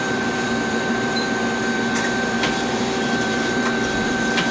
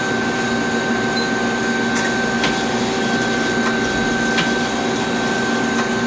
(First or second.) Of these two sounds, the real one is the second